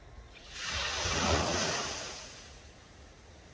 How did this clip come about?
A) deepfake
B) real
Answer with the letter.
A